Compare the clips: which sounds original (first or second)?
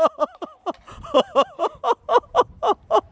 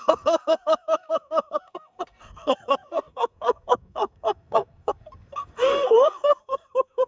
first